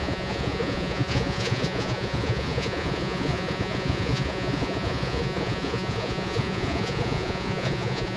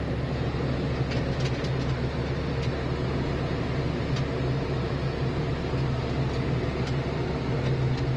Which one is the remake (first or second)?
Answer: first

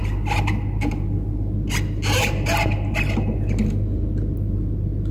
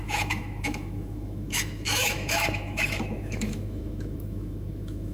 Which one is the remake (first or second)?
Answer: second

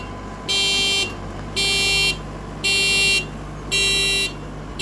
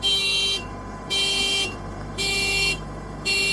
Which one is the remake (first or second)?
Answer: second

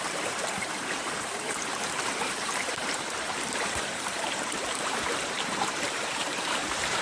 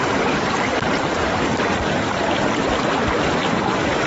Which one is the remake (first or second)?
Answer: first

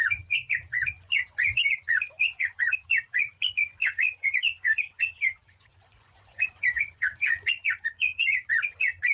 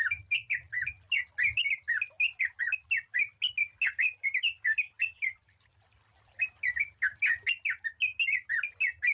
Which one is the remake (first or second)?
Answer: first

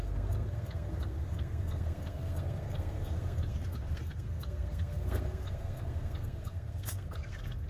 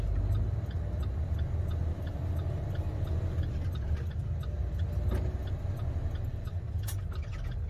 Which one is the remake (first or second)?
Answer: first